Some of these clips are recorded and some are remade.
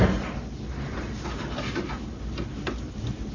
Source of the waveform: recorded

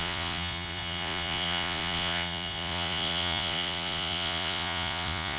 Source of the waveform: remade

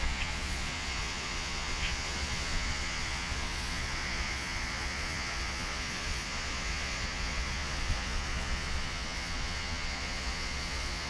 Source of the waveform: remade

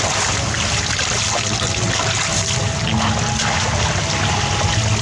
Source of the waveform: recorded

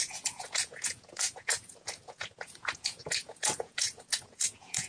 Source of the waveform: remade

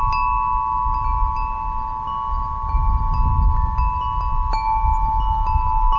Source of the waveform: recorded